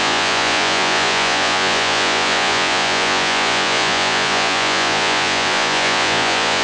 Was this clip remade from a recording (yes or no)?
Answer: yes